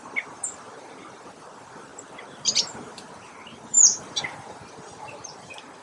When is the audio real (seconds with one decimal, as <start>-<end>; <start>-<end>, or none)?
none